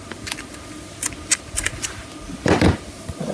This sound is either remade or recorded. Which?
recorded